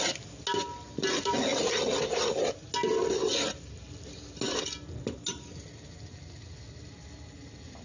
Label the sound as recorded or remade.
recorded